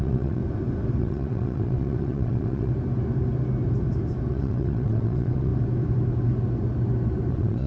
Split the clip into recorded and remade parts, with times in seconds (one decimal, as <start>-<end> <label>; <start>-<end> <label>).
0.0-0.4 remade; 0.4-1.0 recorded; 1.0-2.7 remade; 2.7-4.3 recorded; 4.3-5.5 remade; 5.5-7.3 recorded; 7.3-7.7 remade